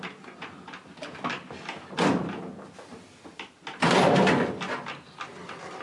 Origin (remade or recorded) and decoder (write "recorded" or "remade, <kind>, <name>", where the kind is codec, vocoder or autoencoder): recorded